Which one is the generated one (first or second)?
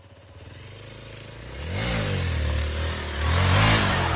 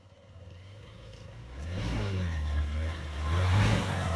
second